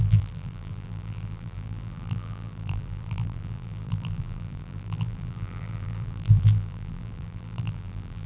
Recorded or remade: remade